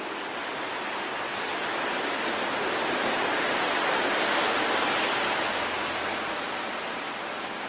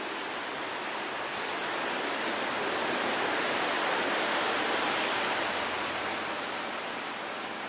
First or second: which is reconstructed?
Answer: second